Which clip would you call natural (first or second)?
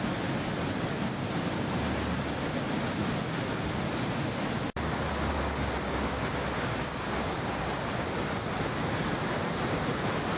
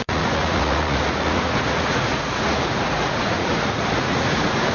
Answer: first